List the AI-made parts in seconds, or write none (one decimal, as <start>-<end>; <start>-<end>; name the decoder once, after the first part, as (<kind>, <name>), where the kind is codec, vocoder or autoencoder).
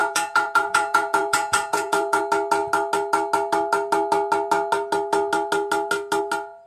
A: 0.0-2.2 (vocoder, Vocos)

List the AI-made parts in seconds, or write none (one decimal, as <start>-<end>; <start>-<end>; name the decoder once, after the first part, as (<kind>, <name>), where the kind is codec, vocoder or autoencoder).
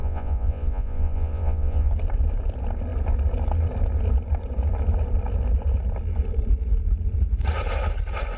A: 0.0-1.9 (vocoder, Vocos)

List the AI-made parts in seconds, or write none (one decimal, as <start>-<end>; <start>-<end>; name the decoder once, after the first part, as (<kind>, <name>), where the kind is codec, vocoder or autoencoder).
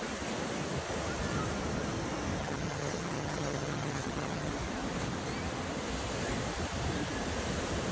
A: 2.4-4.5 (vocoder, HiFi-GAN)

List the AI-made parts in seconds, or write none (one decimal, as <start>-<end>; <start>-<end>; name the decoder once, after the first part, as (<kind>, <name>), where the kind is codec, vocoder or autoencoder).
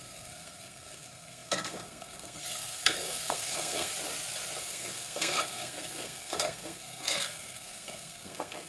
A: 0.0-3.9 (codec, SNAC); 4.6-8.7